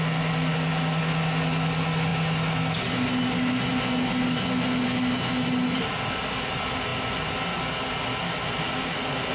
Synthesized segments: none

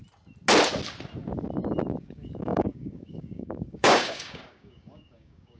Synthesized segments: 2.0-5.6 (codec, DAC)

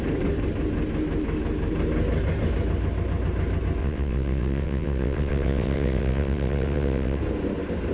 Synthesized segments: 3.8-7.2 (vocoder, WaveNeXt)

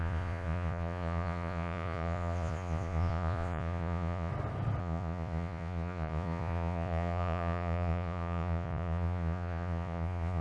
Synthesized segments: 0.0-4.3 (vocoder, Vocos); 4.8-10.4

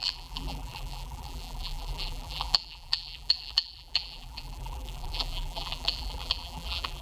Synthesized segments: 0.0-7.0 (vocoder, BigVGAN v2)